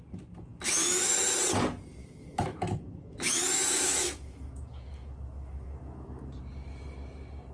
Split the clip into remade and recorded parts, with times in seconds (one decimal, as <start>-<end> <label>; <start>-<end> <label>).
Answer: 0.0-0.5 recorded; 0.5-1.4 remade; 1.4-2.0 recorded; 2.0-6.3 remade; 6.3-7.5 recorded